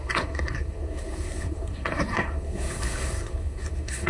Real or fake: fake